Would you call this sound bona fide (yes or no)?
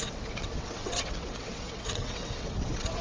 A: no